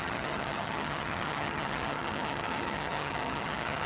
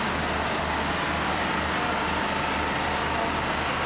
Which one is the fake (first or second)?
first